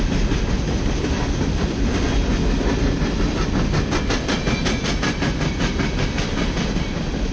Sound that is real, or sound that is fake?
real